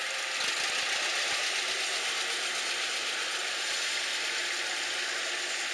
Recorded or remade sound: recorded